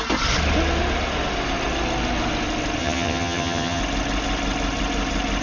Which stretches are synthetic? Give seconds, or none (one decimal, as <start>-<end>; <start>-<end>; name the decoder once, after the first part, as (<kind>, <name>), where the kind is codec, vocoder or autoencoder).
2.8-3.8 (vocoder, HiFi-GAN)